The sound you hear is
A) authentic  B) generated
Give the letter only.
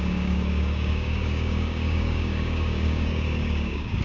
B